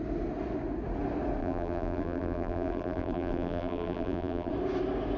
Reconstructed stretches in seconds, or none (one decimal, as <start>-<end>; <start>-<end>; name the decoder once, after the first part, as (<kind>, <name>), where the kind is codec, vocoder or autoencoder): 1.4-4.5 (vocoder, BigVGAN v2)

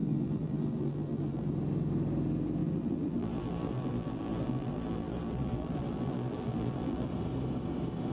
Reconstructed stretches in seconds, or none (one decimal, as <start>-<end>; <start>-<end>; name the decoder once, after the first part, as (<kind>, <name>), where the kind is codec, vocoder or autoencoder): 0.0-1.5 (vocoder, BigVGAN v2); 2.6-7.1

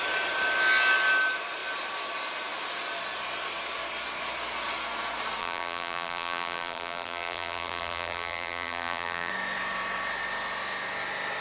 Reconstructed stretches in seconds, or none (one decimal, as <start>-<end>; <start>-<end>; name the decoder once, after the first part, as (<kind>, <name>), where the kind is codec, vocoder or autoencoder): 5.4-9.3 (vocoder, BigVGAN v2)

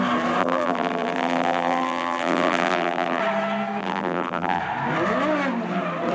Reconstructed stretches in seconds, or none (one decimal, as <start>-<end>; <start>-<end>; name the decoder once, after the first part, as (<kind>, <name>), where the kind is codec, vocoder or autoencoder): 0.4-3.2 (vocoder, BigVGAN v2); 3.8-4.6

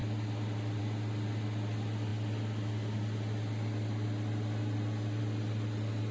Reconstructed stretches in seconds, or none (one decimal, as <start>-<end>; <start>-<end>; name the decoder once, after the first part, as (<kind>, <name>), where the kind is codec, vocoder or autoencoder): none

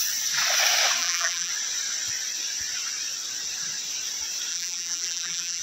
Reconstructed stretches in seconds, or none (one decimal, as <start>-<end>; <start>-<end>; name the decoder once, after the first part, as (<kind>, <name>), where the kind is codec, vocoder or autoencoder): 1.0-1.5 (vocoder, BigVGAN v2); 4.5-5.6